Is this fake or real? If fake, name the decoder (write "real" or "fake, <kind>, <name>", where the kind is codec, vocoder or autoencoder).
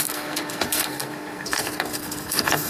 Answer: fake, codec, SNAC